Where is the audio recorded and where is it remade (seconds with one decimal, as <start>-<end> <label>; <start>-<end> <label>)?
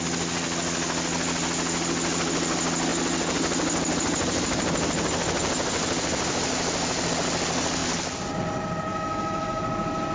0.0-8.9 recorded; 8.9-9.6 remade; 9.6-10.1 recorded